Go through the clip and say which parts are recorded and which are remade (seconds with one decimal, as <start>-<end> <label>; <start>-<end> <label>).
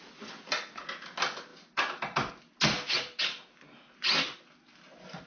0.0-5.3 recorded